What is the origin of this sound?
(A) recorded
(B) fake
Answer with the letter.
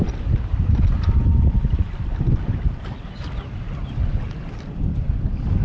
A